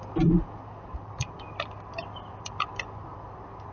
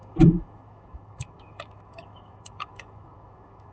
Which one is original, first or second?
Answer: first